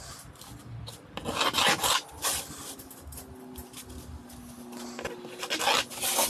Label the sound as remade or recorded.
recorded